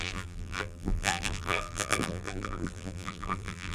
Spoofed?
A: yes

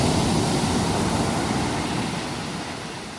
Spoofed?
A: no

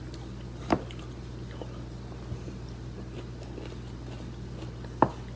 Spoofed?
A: no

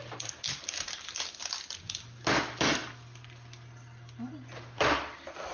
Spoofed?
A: no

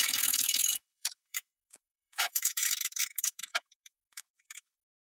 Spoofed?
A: yes